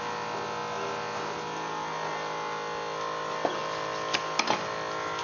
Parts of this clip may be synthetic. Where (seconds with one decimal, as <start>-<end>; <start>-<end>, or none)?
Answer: none